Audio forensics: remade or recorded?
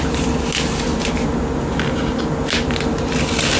recorded